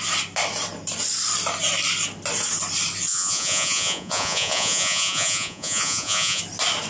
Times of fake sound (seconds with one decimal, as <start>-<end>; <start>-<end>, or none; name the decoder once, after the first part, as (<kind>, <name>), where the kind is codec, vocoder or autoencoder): 3.1-6.4 (vocoder, Vocos)